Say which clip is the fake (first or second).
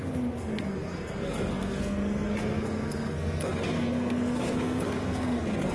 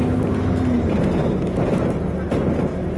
first